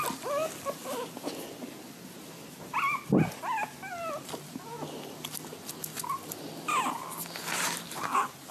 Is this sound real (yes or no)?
yes